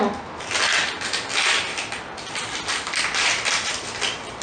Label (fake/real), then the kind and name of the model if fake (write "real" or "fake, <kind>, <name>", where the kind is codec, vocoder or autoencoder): real